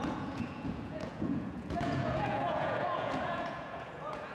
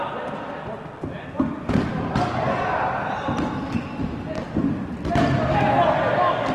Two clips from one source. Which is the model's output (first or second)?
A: first